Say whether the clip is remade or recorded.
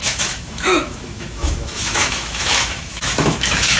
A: remade